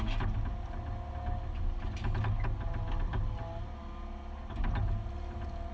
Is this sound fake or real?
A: real